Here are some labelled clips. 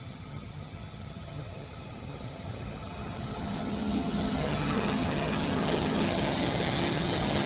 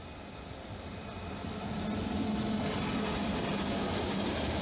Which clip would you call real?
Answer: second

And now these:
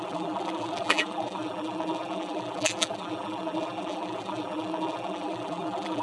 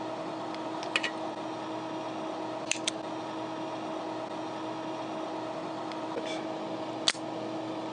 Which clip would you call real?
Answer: second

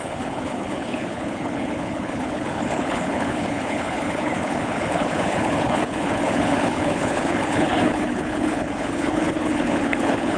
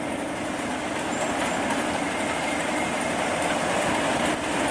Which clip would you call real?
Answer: second